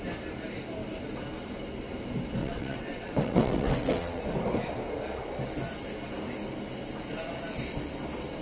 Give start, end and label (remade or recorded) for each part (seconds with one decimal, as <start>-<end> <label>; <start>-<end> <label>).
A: 0.0-2.4 recorded; 2.4-4.2 remade; 4.2-8.4 recorded